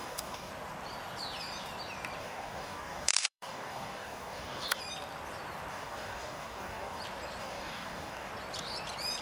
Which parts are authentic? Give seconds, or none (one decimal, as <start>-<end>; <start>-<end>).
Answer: 0.5-2.2; 4.8-5.7; 7.0-7.4; 8.3-9.2